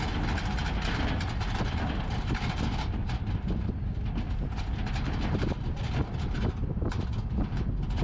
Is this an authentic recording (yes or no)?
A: yes